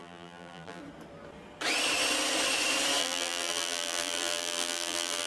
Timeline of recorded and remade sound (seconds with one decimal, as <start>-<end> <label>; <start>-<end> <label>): 0.0-0.8 remade; 0.8-3.0 recorded; 3.0-5.3 remade